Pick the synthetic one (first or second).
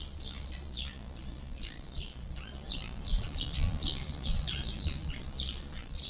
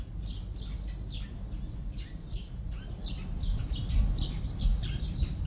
first